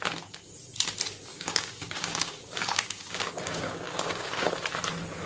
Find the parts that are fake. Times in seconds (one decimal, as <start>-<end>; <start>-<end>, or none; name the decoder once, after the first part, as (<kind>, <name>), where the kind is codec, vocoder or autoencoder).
1.3-4.5 (codec, DAC)